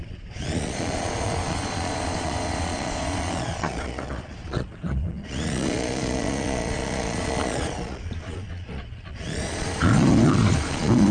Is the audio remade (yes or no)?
yes